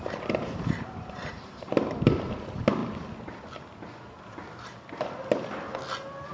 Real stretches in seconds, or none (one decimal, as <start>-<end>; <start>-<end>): 1.8-2.4; 2.8-6.3